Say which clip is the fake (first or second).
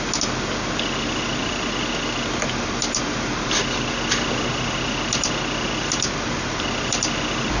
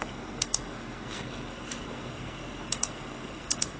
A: second